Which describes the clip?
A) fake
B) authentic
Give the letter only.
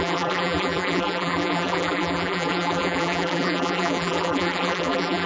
A